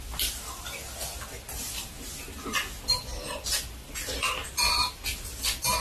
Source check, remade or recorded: recorded